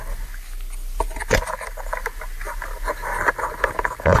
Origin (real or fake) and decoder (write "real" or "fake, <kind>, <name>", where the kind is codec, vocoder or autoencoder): real